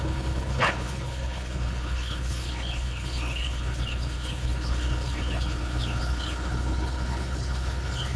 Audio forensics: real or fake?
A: fake